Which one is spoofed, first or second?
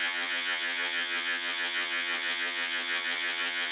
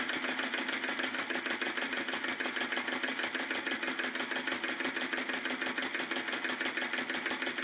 first